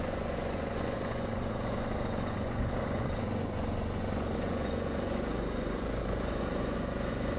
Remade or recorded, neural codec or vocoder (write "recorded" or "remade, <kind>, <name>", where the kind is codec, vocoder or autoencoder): remade, vocoder, Vocos